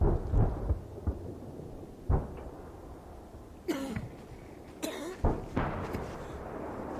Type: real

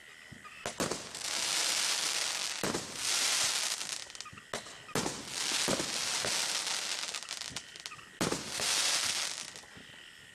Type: real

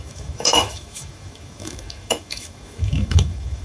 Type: fake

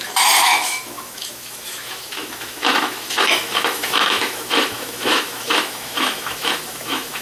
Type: fake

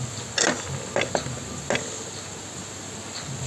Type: real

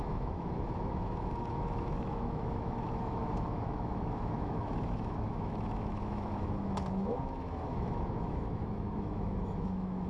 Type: fake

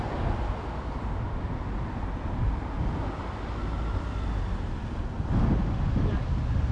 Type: real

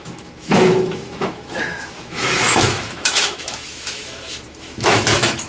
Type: fake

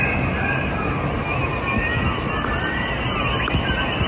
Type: real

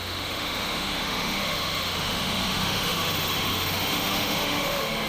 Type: fake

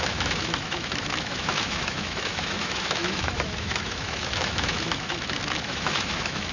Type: fake